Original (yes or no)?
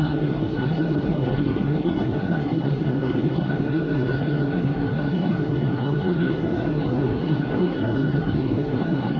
no